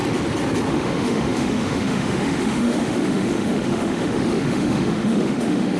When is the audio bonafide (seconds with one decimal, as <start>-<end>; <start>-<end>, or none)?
0.0-0.7